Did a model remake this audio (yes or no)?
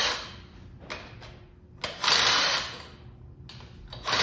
no